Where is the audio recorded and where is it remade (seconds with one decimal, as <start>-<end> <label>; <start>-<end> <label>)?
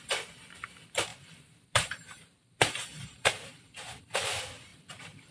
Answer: 0.0-1.1 recorded; 1.1-4.0 remade; 4.0-4.7 recorded; 4.7-5.3 remade